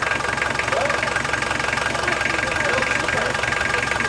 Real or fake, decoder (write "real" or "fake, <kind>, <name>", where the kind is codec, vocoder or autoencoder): real